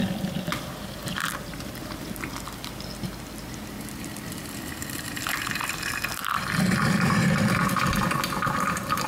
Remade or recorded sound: remade